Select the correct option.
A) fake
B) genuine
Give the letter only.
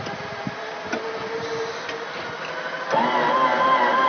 B